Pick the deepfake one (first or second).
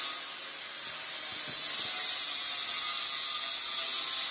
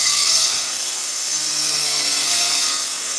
second